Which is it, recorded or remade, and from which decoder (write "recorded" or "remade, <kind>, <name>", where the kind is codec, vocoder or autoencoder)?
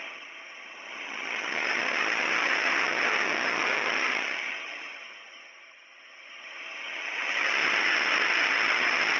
remade, vocoder, HiFi-GAN